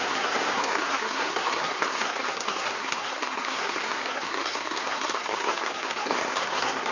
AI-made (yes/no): yes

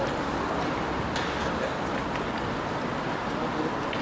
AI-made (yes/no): no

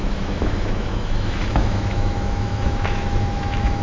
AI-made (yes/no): yes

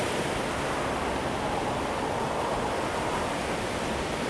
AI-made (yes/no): no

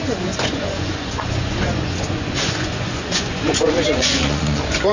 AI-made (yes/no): yes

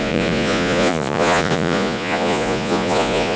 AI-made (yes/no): yes